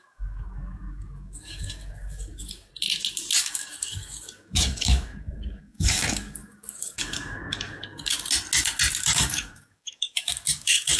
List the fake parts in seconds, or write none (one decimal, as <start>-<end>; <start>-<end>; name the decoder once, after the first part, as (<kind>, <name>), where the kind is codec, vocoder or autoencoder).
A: 0.0-2.7 (codec, DAC); 3.4-8.1; 9.0-11.0